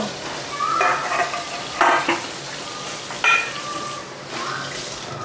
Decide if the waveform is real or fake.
real